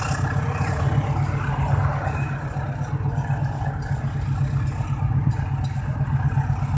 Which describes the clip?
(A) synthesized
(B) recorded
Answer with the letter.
B